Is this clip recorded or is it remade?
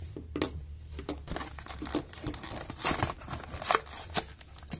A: recorded